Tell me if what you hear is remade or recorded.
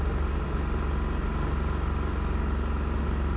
recorded